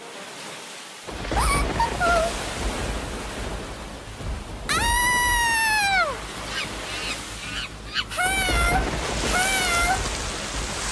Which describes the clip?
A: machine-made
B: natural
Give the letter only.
B